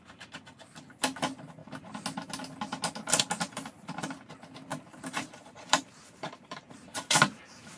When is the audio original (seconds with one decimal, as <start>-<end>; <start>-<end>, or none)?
0.0-4.7